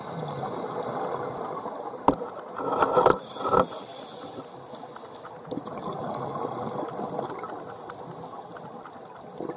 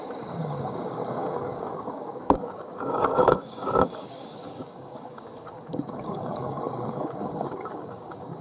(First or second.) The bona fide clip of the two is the first